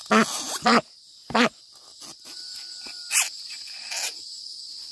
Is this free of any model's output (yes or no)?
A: yes